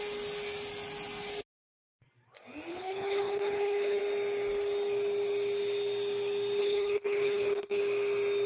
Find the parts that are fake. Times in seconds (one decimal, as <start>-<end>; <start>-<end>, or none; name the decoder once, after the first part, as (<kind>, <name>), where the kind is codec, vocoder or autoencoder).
2.7-4.0 (codec, HILCodec); 6.6-7.8